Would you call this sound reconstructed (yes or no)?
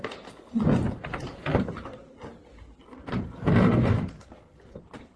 yes